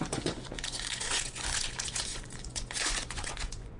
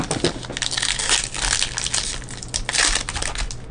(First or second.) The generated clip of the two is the first